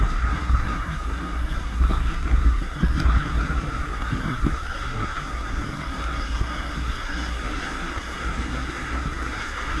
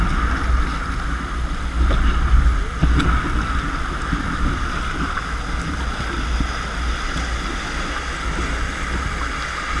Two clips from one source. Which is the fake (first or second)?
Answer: first